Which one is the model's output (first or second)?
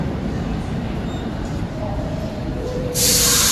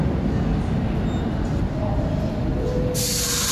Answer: first